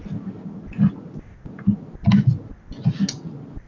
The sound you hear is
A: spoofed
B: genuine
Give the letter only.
B